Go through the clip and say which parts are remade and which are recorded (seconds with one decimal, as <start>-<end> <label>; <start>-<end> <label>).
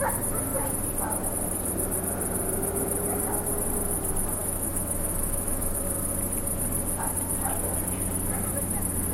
0.0-4.4 recorded; 4.4-5.8 remade; 5.8-9.1 recorded